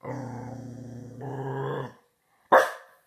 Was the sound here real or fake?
real